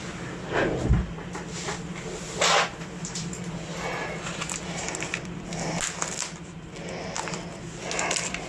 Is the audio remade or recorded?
recorded